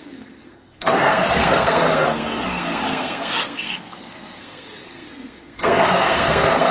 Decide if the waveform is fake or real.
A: fake